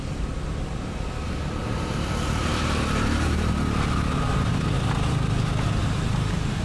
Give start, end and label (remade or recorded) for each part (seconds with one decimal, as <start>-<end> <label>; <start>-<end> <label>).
0.0-1.6 recorded; 1.6-3.5 remade; 3.5-5.8 recorded; 5.8-6.6 remade